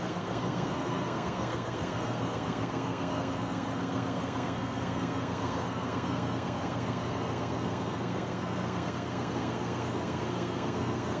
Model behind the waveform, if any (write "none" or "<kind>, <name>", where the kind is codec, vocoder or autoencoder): codec, SNAC